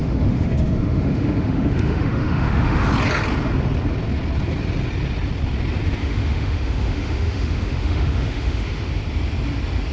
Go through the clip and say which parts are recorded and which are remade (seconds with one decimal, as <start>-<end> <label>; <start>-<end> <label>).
0.0-2.9 remade; 2.9-6.0 recorded; 6.0-8.9 remade; 8.9-9.9 recorded

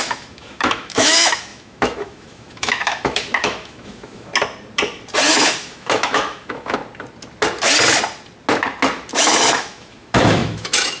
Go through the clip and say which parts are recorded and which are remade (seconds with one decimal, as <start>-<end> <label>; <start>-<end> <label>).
0.0-4.3 remade; 4.3-5.3 recorded; 5.3-6.8 remade; 6.8-9.2 recorded; 9.2-11.0 remade

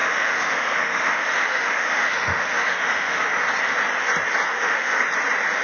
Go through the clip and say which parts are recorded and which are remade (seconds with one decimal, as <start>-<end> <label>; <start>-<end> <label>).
0.0-3.4 remade; 3.4-4.5 recorded; 4.5-5.0 remade; 5.0-5.6 recorded